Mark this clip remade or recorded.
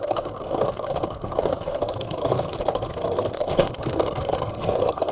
remade